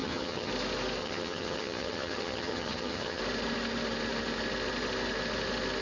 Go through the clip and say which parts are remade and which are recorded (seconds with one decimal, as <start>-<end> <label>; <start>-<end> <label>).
0.0-0.5 remade; 0.5-1.0 recorded; 1.0-3.2 remade; 3.2-5.8 recorded